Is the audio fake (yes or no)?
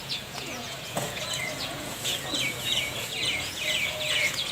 yes